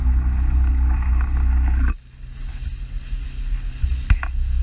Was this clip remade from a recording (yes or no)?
no